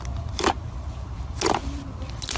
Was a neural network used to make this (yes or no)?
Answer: no